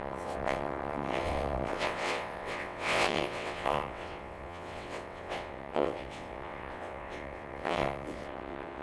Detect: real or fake fake